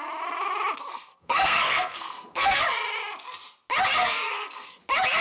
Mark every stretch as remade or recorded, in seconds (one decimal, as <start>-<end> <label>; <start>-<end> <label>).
0.0-0.9 recorded; 0.9-2.6 remade; 2.6-4.0 recorded; 4.0-4.8 remade; 4.8-5.2 recorded